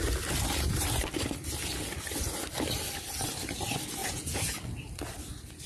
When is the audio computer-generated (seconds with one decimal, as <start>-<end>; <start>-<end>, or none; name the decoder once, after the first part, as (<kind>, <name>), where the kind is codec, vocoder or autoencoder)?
4.0-4.6 (vocoder, Vocos)

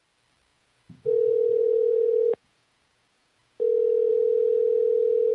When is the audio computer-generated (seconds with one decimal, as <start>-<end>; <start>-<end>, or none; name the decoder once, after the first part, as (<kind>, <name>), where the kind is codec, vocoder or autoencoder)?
0.5-3.6 (vocoder, Vocos)

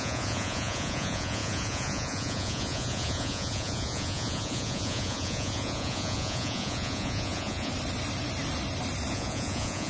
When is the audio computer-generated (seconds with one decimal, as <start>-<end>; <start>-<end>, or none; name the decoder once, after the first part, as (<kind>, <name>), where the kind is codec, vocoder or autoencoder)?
0.0-7.7 (vocoder, Vocos); 9.1-9.9

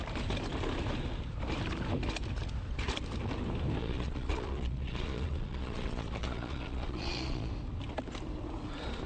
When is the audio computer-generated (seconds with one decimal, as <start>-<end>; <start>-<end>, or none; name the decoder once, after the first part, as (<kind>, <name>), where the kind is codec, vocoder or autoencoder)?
3.8-7.5 (vocoder, Vocos)